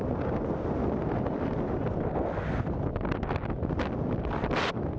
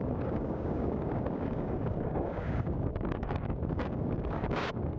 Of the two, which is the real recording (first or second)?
first